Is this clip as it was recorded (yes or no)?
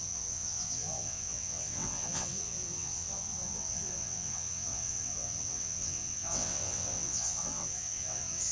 no